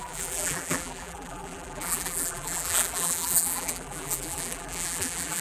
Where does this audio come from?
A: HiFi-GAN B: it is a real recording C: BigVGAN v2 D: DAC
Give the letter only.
C